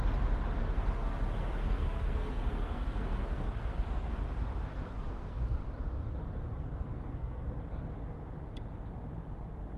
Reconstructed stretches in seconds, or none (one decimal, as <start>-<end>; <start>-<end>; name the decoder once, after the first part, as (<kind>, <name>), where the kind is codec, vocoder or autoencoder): 0.6-4.2 (codec, SNAC); 4.7-5.7; 6.5-7.9